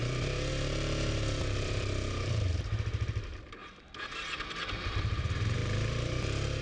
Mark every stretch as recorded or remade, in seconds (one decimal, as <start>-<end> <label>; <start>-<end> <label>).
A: 0.0-3.6 remade; 3.6-4.8 recorded; 4.8-6.6 remade